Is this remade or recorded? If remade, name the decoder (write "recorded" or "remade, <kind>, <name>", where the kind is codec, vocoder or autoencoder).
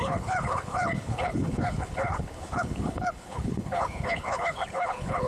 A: remade, codec, HILCodec